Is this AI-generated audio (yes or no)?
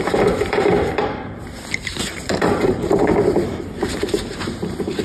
yes